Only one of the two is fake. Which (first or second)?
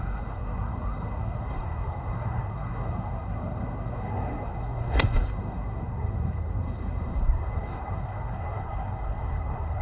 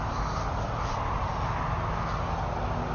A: first